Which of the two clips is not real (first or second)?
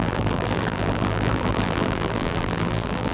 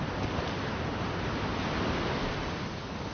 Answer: first